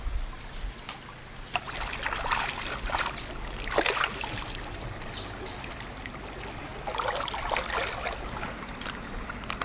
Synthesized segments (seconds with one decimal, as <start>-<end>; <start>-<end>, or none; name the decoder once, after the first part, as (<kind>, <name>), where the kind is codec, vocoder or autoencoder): none